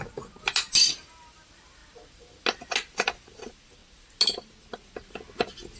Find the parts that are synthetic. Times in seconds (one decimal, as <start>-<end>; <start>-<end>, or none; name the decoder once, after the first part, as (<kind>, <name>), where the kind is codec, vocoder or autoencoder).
none